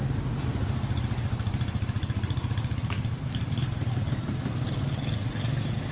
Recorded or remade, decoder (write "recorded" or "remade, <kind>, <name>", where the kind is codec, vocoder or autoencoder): recorded